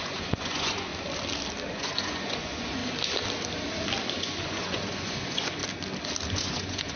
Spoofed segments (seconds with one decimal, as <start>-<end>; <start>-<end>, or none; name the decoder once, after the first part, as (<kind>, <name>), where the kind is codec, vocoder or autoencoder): 0.0-0.9 (vocoder, Vocos); 1.7-2.8; 4.2-5.6; 6.3-7.0